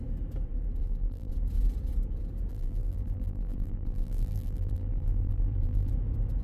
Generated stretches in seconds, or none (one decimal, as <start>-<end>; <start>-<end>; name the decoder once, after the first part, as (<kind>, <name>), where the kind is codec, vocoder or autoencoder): 0.8-1.3 (vocoder, BigVGAN v2); 2.5-5.9